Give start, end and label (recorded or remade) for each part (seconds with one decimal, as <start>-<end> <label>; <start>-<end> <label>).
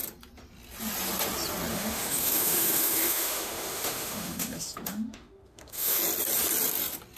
0.0-1.7 recorded; 1.7-6.0 remade; 6.0-7.2 recorded